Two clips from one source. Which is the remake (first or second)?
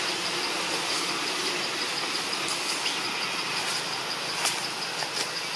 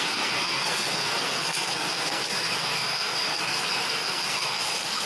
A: second